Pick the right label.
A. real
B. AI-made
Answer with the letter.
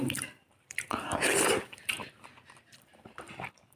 B